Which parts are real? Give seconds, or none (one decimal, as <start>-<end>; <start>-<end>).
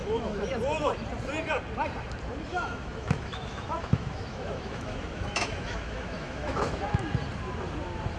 0.5-2.5; 6.8-8.2